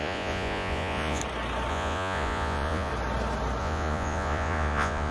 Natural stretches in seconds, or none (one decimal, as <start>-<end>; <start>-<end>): 1.2-1.7; 2.9-3.6